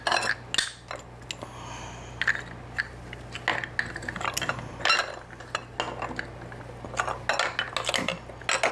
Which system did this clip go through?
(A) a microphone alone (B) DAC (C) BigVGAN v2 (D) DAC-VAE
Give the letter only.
A